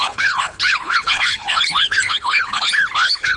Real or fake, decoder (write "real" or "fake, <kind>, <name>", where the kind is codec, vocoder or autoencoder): fake, codec, HILCodec